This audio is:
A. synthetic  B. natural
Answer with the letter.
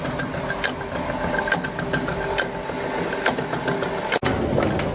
B